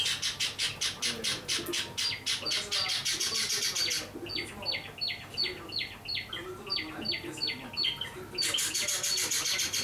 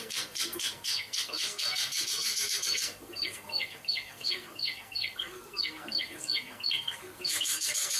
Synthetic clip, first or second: second